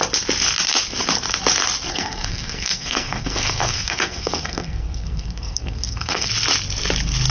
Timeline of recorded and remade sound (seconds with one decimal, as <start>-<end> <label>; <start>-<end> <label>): 0.0-1.9 recorded; 1.9-6.3 remade; 6.3-7.3 recorded